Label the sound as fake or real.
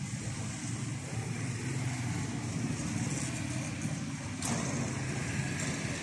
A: real